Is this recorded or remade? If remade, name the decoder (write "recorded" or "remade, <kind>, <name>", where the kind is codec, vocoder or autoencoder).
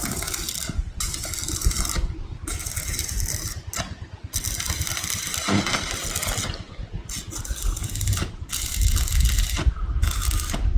recorded